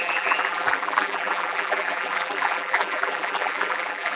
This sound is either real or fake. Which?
fake